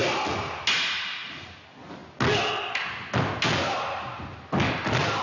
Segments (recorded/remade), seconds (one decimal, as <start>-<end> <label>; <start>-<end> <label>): 0.0-5.2 recorded